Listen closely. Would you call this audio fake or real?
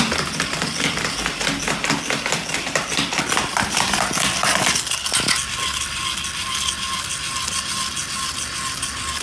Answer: real